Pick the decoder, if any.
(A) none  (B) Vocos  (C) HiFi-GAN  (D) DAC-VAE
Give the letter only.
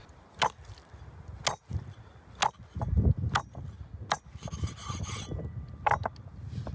A